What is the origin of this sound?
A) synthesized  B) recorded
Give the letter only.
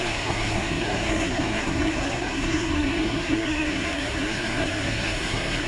A